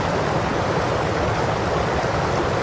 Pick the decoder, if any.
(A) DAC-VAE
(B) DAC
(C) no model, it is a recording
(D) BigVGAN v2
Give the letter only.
C